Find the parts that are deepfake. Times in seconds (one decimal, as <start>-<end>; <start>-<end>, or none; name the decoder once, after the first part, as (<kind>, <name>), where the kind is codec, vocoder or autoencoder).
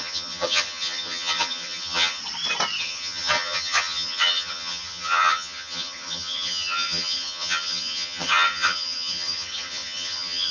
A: 0.0-2.2 (vocoder, HiFi-GAN); 2.8-10.5